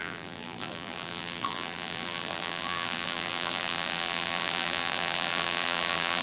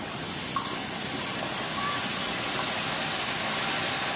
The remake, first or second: first